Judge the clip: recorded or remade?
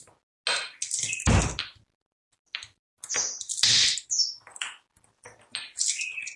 recorded